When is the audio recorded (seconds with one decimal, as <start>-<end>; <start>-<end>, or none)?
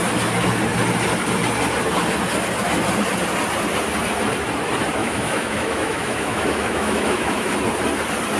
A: 0.0-5.0; 7.5-8.4